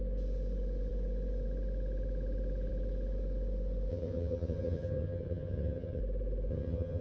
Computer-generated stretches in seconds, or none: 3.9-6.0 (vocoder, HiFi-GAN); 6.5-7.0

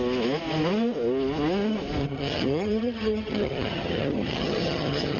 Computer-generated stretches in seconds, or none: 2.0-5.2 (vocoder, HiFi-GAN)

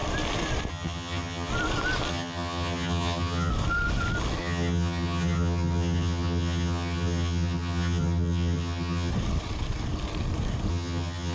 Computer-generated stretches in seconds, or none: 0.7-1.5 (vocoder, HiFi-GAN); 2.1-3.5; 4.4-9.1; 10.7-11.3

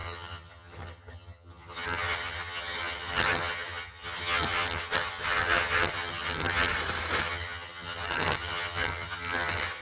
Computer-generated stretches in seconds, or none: 0.0-6.7 (vocoder, HiFi-GAN); 7.2-9.8

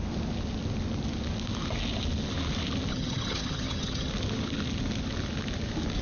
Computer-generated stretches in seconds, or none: 2.9-4.1 (vocoder, HiFi-GAN)

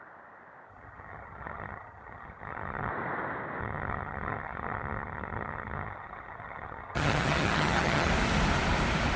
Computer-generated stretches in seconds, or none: 0.7-2.9 (vocoder, HiFi-GAN); 3.6-8.1

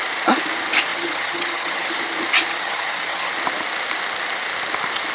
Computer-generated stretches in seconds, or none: 0.9-1.9 (vocoder, HiFi-GAN); 2.5-3.3

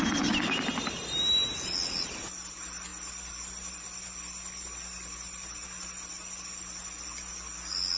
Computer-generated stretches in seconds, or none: none